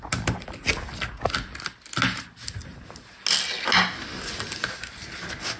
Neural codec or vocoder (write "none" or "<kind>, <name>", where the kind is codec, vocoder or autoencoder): none